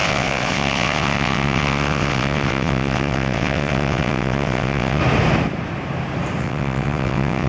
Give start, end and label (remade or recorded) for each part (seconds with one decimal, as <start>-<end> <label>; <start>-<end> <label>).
0.0-5.0 remade; 5.0-6.4 recorded; 6.4-7.5 remade